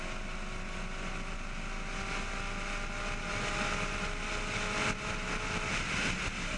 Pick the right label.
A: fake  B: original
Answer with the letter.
B